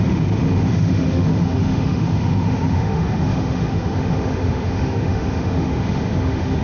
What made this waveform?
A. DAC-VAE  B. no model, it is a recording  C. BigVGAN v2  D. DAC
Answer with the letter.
A